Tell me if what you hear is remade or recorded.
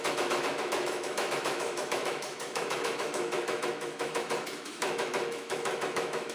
remade